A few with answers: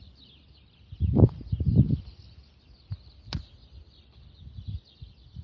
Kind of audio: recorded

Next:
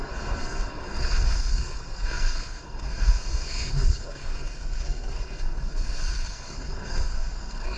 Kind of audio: remade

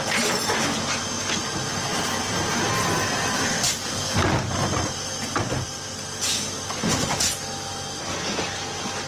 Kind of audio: recorded